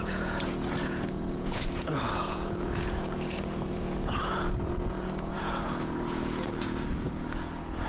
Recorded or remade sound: remade